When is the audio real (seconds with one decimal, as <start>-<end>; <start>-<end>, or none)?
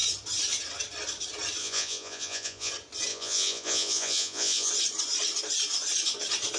0.0-1.6; 2.7-3.1; 4.7-6.6